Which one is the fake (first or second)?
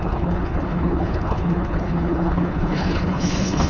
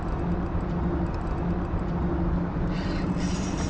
first